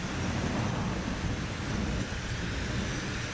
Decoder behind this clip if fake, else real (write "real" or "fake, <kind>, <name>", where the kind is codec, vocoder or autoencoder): real